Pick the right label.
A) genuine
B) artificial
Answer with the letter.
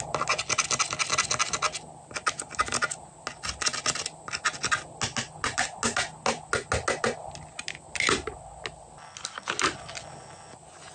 A